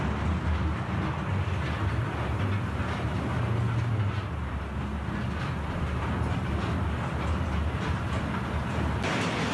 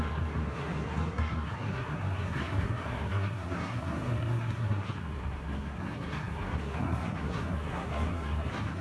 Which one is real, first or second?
first